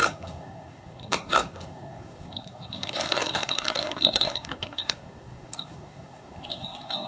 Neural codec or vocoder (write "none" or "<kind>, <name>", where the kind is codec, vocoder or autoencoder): codec, SNAC